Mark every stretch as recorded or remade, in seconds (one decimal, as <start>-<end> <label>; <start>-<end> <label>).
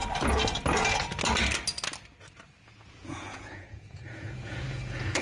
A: 0.0-2.9 recorded; 2.9-5.2 remade